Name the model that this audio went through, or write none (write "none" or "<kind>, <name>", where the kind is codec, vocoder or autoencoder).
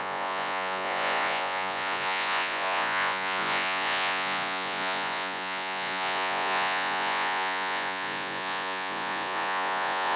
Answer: vocoder, Vocos